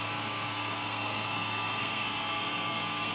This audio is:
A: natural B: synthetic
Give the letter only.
B